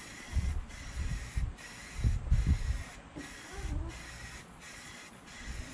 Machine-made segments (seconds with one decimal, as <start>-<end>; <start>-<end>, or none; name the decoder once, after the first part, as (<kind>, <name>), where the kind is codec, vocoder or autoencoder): 0.0-1.1 (vocoder, Vocos); 4.4-5.7

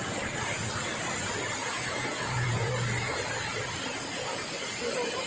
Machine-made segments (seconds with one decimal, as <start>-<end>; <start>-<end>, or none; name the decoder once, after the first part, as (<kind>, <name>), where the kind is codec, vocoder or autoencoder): 1.6-2.7 (vocoder, Vocos)